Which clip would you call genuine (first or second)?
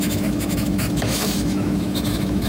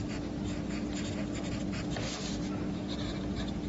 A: second